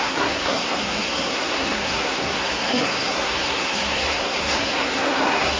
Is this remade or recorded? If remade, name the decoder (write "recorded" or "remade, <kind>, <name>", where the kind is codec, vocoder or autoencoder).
remade, codec, SNAC